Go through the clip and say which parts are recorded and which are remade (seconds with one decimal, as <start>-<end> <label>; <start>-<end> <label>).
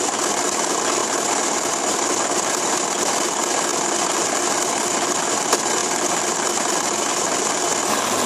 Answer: 0.0-3.7 recorded; 3.7-4.9 remade; 4.9-8.3 recorded